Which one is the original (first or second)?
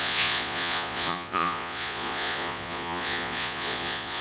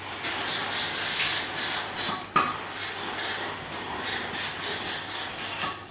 second